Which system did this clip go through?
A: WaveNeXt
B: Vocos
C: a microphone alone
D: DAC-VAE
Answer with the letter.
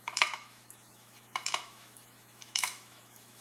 D